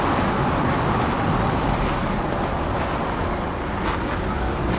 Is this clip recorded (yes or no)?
yes